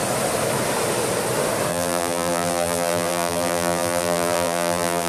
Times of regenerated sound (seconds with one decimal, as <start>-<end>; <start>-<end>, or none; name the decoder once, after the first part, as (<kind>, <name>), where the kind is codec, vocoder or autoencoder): 1.7-5.1 (vocoder, BigVGAN v2)